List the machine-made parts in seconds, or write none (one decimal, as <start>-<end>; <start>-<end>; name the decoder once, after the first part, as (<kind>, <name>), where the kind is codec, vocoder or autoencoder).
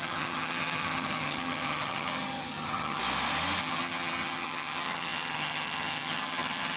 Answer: 0.0-3.0 (vocoder, HiFi-GAN); 3.6-6.8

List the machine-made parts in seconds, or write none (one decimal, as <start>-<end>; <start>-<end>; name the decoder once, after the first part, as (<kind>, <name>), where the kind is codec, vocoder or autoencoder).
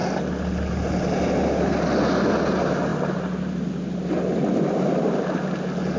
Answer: none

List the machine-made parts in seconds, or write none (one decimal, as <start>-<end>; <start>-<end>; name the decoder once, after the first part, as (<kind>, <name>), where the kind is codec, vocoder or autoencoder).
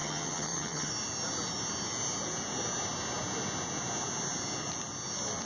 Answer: 0.0-0.9 (vocoder, HiFi-GAN)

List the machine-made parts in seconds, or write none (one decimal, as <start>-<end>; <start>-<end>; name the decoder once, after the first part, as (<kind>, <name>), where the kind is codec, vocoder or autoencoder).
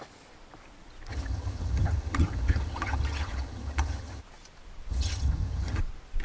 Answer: 1.1-4.2 (vocoder, HiFi-GAN); 4.9-5.8